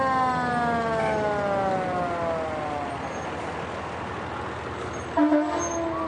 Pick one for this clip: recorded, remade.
recorded